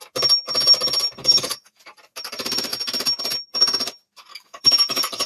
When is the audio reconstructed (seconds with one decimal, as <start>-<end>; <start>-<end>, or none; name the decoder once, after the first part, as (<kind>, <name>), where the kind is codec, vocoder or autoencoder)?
1.2-1.8 (codec, DAC); 4.3-5.3